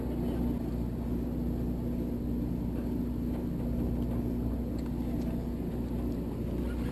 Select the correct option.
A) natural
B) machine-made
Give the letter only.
A